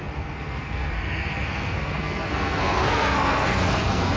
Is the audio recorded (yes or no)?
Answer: no